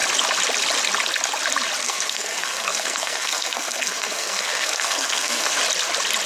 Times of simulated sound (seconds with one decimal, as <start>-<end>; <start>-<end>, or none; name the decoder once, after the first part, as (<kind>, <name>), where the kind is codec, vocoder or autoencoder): 1.8-5.6 (codec, SNAC)

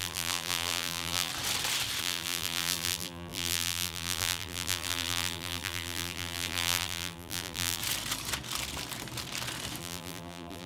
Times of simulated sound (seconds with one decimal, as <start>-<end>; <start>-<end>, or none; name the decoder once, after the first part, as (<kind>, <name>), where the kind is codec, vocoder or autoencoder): 0.0-1.3 (vocoder, BigVGAN v2); 2.0-7.8; 9.8-10.7

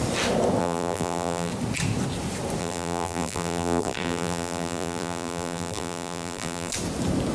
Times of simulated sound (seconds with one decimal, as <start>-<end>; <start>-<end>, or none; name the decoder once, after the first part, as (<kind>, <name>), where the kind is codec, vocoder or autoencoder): 0.6-1.5 (vocoder, BigVGAN v2); 2.6-6.7

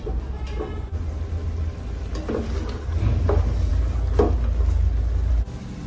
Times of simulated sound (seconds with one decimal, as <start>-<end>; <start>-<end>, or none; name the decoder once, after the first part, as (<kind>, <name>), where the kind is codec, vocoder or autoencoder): none